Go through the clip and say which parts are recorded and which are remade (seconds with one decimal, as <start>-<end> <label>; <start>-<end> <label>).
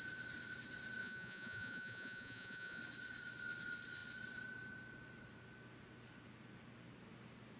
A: 0.0-1.0 recorded; 1.0-2.8 remade; 2.8-7.6 recorded